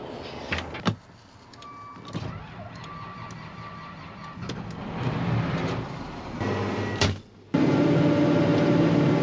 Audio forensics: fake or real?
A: real